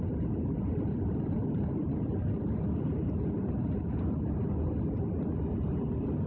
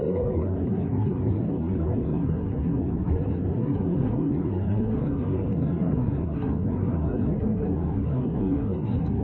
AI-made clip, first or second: second